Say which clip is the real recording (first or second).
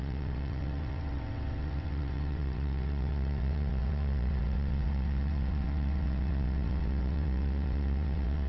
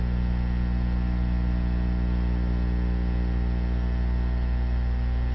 second